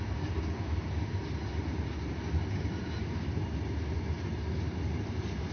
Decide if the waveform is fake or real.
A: real